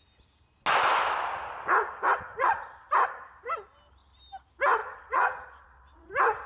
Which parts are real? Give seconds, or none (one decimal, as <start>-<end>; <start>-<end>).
0.0-2.3; 2.9-4.8; 6.1-6.5